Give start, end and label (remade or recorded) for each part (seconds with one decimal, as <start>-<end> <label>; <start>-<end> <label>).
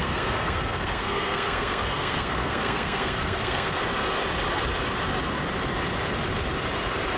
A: 0.0-3.8 remade; 3.8-7.2 recorded